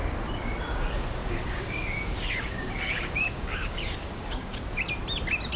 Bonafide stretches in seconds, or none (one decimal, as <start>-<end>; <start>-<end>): 0.0-1.2; 4.6-5.6